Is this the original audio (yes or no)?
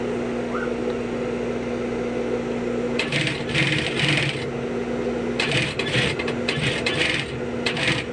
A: yes